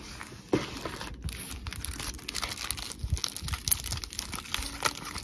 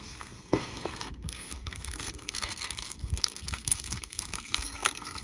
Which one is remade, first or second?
second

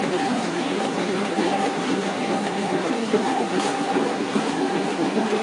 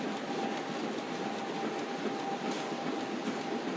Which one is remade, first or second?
first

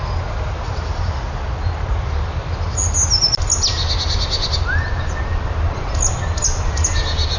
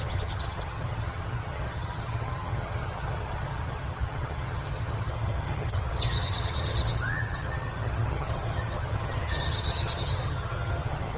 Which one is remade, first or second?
second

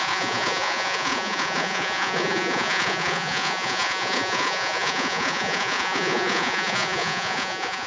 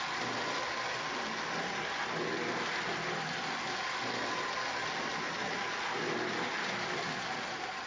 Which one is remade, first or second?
first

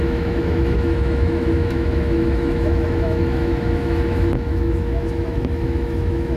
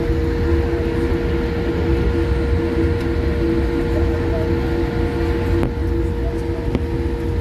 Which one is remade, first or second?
first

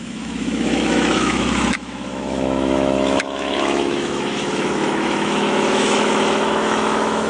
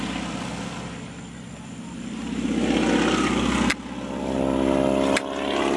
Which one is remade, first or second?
first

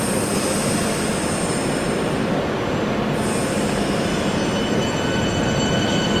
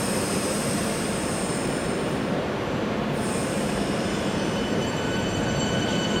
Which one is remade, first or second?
second